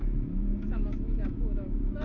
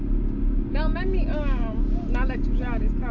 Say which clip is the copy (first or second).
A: first